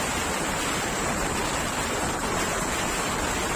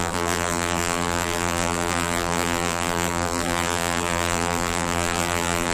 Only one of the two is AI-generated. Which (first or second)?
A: second